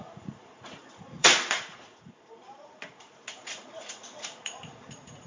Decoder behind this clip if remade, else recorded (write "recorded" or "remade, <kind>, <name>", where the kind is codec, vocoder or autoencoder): remade, vocoder, Vocos